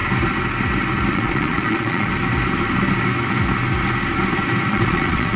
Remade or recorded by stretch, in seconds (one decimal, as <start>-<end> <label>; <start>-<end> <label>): 0.0-1.1 recorded; 1.1-2.1 remade; 2.1-4.7 recorded; 4.7-5.4 remade